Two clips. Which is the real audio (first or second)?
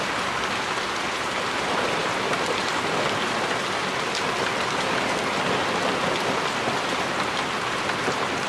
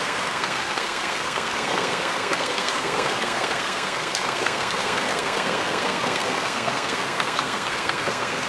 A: first